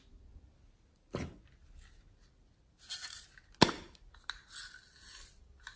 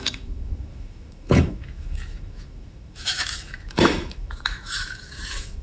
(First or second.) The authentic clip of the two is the first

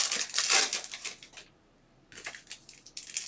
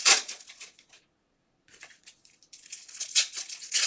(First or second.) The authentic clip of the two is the first